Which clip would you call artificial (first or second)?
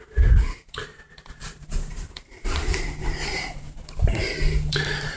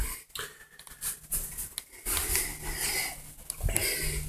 first